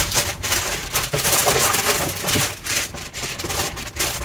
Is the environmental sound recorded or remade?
remade